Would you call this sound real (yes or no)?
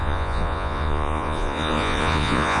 no